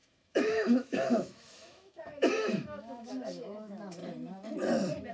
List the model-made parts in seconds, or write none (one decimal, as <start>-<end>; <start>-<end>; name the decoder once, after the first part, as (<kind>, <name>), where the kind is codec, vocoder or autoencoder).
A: 0.0-4.0 (autoencoder, DAC-VAE)